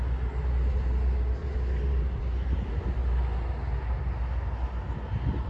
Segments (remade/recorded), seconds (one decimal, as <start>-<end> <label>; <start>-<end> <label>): 0.0-1.4 recorded; 1.4-2.2 remade; 2.2-5.5 recorded